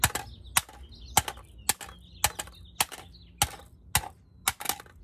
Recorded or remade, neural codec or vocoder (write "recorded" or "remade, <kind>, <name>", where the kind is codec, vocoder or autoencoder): recorded